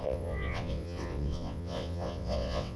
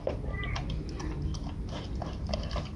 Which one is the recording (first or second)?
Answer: second